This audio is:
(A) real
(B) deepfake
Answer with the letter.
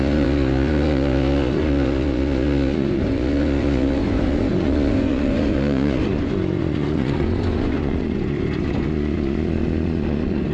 B